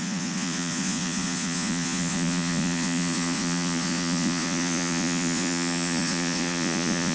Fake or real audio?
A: fake